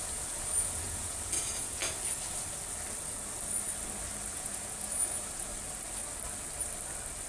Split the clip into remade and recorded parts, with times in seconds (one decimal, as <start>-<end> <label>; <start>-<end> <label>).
0.0-1.8 remade; 1.8-4.3 recorded; 4.3-5.5 remade; 5.5-7.3 recorded